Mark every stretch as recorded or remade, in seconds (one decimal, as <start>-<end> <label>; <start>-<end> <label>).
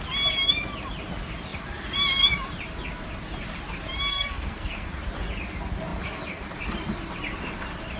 0.0-4.1 recorded; 4.1-4.9 remade; 4.9-8.0 recorded